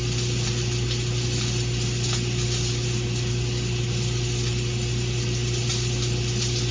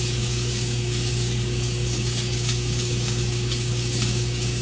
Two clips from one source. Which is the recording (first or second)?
first